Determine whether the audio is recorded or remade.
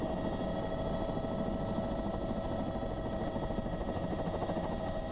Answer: recorded